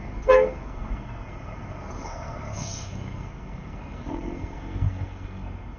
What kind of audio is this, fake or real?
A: fake